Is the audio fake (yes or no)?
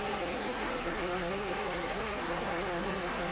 yes